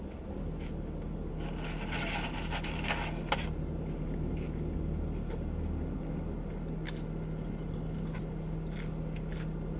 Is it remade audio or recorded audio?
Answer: recorded